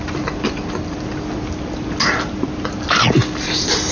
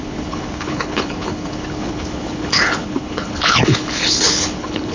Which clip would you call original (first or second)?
first